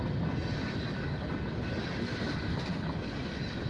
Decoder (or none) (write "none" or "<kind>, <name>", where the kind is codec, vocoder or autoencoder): none